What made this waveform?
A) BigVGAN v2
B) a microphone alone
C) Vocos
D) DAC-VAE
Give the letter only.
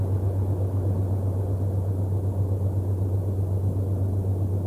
B